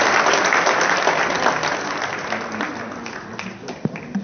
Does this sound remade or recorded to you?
recorded